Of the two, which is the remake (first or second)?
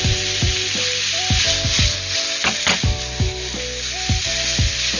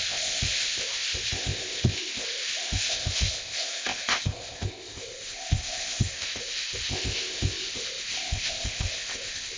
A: second